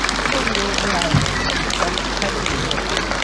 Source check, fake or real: real